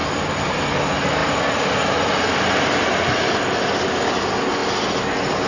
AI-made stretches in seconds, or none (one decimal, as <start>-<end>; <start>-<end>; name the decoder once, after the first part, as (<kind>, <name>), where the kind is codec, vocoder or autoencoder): none